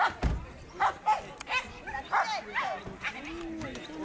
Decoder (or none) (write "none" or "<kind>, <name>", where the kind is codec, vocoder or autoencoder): none